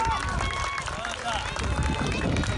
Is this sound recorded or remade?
recorded